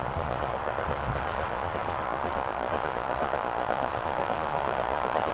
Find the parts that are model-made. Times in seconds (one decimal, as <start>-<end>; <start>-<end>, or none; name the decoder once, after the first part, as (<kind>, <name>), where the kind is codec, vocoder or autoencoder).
0.0-5.3 (vocoder, Vocos)

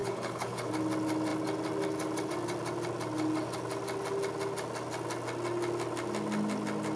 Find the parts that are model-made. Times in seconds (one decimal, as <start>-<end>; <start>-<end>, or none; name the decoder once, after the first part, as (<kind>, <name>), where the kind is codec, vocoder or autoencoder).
0.0-0.7 (codec, HILCodec)

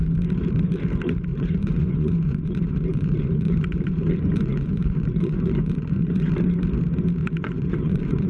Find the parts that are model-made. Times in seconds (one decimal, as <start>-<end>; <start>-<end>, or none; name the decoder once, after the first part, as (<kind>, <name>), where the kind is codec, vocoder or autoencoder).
1.3-6.3 (vocoder, Vocos); 7.2-8.3

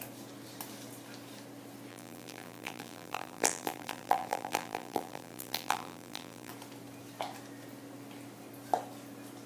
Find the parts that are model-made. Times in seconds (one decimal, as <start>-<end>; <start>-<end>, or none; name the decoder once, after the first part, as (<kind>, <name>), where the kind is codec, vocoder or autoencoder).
1.9-6.5 (vocoder, BigVGAN v2)